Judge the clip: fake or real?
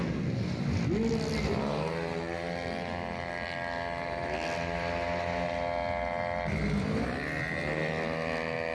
real